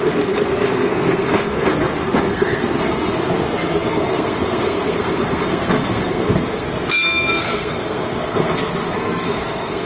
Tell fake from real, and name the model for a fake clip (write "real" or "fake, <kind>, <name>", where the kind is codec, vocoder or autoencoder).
fake, codec, SNAC